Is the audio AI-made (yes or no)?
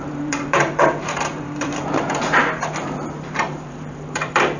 yes